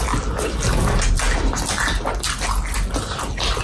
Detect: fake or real real